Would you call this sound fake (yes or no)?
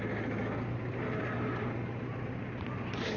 no